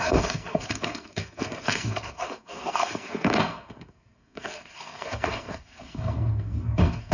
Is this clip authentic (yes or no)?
no